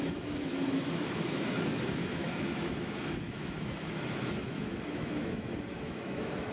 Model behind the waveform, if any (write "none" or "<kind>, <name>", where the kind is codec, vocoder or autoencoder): autoencoder, DAC-VAE